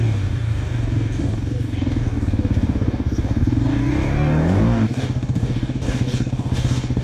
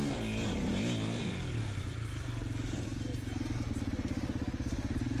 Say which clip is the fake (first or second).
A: first